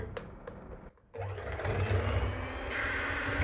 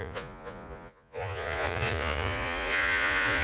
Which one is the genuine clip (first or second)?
first